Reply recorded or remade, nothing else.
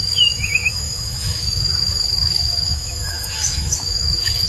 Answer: remade